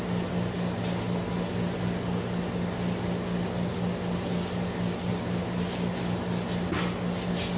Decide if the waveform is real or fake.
real